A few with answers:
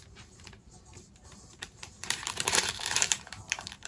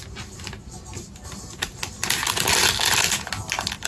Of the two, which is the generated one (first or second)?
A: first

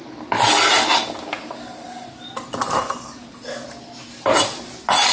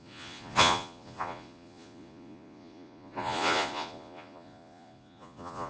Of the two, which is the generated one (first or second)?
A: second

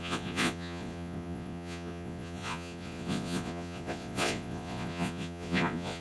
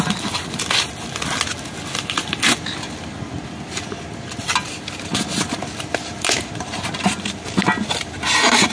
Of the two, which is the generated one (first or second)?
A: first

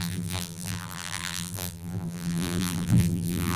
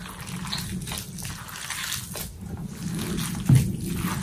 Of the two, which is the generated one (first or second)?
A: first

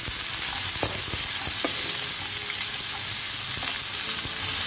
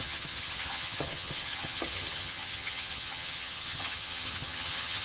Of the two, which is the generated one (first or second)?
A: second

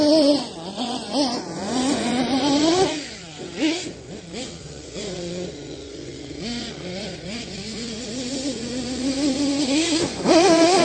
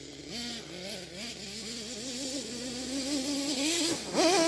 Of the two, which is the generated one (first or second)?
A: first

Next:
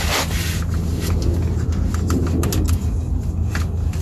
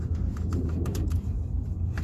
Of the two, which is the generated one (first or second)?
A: second